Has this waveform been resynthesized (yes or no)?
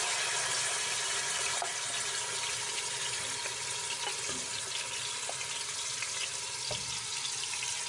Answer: no